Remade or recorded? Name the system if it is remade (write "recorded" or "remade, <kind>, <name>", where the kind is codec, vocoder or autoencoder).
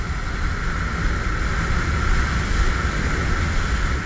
recorded